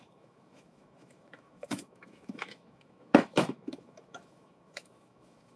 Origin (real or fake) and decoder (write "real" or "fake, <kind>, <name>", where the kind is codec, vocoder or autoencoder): fake, autoencoder, DAC-VAE